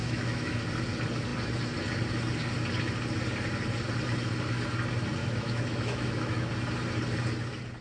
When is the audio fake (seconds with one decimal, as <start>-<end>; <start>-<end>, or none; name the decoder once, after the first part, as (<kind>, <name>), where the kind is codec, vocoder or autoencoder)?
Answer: 0.0-0.6 (autoencoder, DAC-VAE); 5.2-6.5